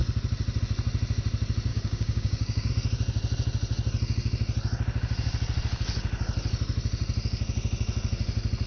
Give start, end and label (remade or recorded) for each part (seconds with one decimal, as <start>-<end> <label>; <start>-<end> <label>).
0.0-1.7 recorded; 1.7-2.7 remade; 2.7-8.7 recorded